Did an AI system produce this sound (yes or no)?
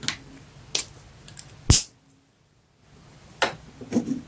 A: no